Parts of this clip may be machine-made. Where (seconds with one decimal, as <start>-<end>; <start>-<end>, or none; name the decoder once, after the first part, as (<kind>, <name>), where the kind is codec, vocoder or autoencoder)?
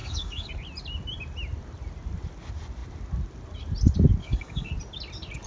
0.0-0.5 (codec, DAC); 4.2-4.7